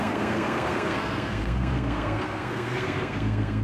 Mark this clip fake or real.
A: fake